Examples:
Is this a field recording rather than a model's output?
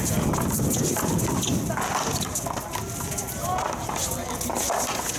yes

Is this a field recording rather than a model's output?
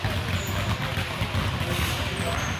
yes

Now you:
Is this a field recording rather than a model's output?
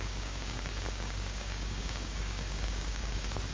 no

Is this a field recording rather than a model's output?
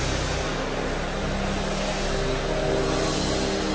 yes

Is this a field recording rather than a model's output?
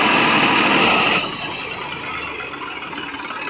yes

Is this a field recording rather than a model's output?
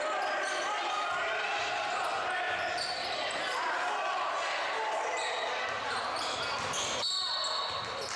yes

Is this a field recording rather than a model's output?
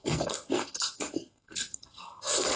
no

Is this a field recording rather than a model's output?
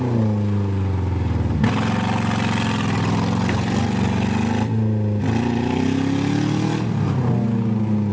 yes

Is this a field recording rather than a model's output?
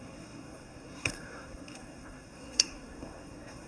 no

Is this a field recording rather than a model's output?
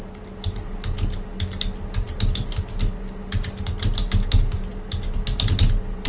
yes